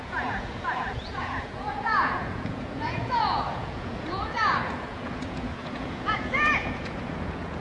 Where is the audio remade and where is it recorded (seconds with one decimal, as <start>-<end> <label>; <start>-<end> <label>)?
0.0-7.6 remade